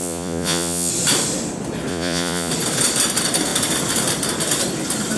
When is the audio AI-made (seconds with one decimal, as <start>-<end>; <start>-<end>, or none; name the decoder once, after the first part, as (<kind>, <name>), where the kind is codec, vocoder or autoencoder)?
0.0-0.9 (vocoder, Vocos); 1.9-2.5